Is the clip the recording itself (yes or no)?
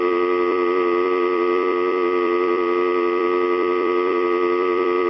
no